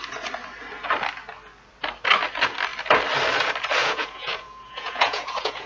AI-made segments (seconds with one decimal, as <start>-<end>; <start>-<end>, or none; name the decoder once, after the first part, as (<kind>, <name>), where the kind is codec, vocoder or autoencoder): 3.8-5.7 (vocoder, Vocos)

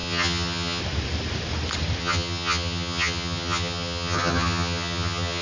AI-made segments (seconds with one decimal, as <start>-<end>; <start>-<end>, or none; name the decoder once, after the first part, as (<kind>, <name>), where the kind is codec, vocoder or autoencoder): 0.0-0.8 (vocoder, HiFi-GAN); 2.0-5.4

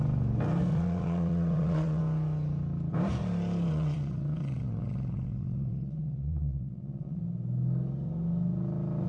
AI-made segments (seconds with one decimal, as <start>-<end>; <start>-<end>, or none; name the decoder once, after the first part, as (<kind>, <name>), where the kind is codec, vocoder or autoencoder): 0.7-2.0 (vocoder, WaveNeXt); 3.7-7.2

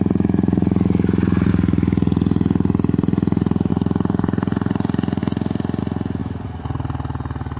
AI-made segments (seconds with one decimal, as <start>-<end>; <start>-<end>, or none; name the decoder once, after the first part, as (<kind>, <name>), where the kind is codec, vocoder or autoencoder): 0.0-1.5 (vocoder, BigVGAN v2); 3.7-5.2; 5.8-6.2

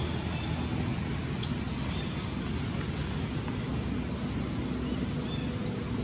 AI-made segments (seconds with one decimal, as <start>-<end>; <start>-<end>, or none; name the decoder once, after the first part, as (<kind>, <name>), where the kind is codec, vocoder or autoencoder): none

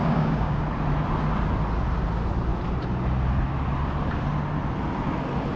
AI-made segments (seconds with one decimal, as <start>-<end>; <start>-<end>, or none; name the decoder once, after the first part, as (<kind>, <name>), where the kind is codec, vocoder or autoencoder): 0.0-0.6 (codec, DAC)

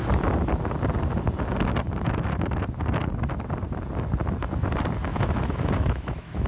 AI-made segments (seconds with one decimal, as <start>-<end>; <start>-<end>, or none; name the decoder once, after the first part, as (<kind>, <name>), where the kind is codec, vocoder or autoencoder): 5.1-6.5 (autoencoder, DAC-VAE)

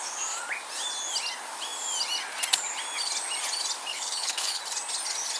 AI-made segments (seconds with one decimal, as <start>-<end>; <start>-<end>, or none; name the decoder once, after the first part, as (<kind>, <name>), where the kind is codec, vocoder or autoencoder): 3.9-4.6 (codec, HILCodec)